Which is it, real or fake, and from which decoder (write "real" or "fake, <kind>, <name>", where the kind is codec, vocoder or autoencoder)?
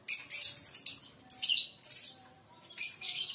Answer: real